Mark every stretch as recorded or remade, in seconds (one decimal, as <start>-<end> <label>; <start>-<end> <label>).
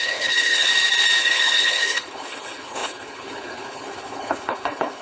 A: 0.0-0.7 remade; 0.7-1.2 recorded; 1.2-5.0 remade